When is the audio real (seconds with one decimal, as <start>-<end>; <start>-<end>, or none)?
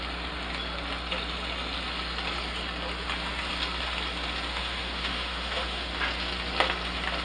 0.0-4.5; 5.9-7.2